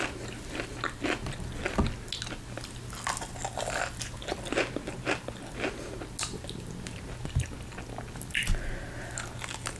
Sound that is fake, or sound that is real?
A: real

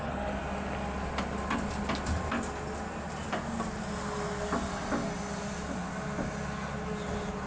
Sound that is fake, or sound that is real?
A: real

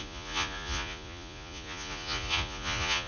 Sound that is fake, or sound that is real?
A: fake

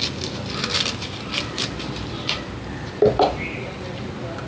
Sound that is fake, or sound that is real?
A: real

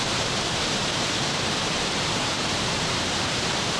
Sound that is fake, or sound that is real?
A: fake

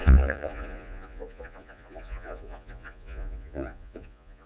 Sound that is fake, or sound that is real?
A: fake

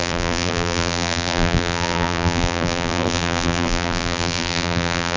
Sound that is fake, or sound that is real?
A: fake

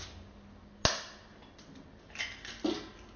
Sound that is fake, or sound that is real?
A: real